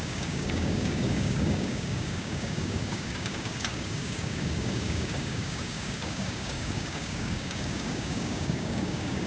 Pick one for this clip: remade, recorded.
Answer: remade